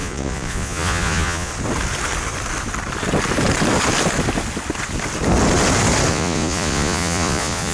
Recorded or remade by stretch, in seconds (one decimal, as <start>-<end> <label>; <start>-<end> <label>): 0.0-1.5 remade; 1.5-6.1 recorded; 6.1-7.7 remade